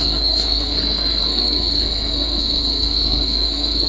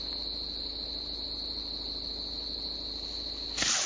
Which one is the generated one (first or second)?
first